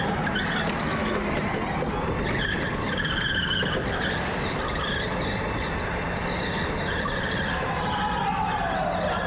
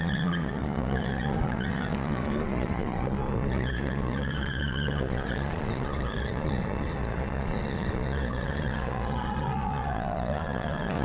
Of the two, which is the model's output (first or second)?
second